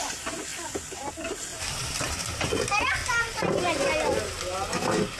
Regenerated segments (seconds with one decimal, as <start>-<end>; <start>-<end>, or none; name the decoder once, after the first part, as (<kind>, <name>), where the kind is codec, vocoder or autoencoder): 1.5-2.5 (vocoder, BigVGAN v2)